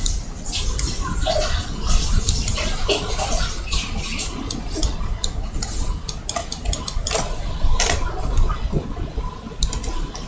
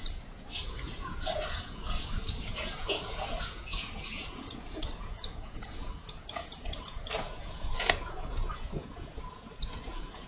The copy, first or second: second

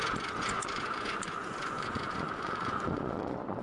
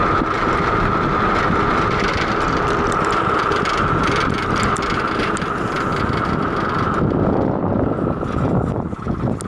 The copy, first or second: first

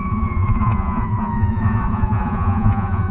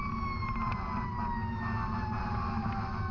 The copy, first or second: first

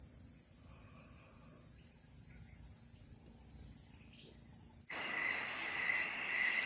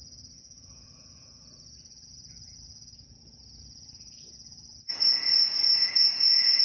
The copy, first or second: second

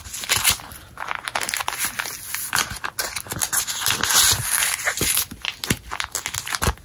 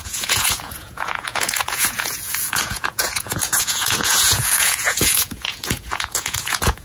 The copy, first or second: second